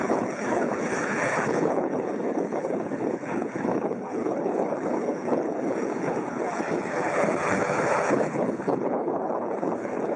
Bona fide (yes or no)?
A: no